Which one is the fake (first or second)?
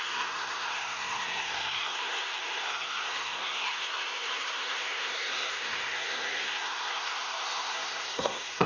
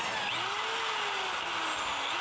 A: first